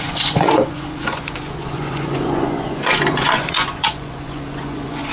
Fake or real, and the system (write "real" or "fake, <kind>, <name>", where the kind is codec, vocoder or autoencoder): fake, vocoder, Vocos